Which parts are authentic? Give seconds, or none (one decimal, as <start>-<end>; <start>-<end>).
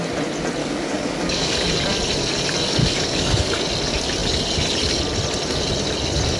0.0-0.6; 1.7-2.8; 3.6-6.4